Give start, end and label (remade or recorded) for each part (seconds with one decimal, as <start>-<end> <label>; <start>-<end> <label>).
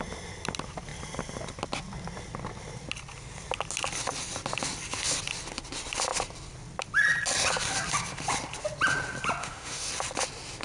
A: 0.0-9.4 recorded; 9.4-9.9 remade; 9.9-10.6 recorded